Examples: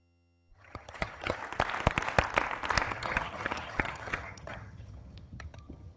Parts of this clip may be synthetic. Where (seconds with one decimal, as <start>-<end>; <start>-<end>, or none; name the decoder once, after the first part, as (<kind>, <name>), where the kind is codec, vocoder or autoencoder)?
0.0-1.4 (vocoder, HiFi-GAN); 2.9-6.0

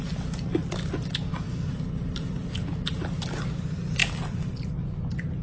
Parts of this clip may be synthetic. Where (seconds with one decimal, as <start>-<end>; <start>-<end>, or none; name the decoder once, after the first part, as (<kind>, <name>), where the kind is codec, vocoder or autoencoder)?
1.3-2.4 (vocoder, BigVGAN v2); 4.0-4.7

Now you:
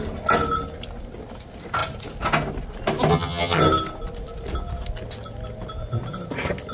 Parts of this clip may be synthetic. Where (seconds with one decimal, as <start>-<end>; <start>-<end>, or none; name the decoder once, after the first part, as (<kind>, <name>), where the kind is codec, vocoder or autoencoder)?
3.1-3.6 (vocoder, HiFi-GAN)